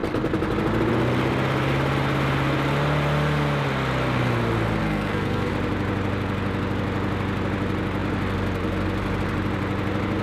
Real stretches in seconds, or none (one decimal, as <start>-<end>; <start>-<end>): 0.0-4.8; 5.5-10.2